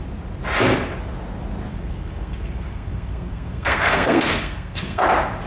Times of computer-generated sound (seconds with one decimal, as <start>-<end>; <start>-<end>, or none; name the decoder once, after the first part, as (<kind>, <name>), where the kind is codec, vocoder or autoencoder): 1.7-5.0 (codec, SNAC)